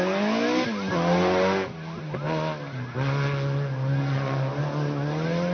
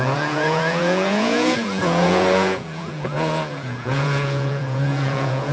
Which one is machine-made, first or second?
second